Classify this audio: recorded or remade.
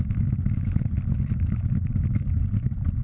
recorded